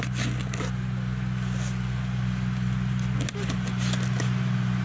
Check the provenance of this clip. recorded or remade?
recorded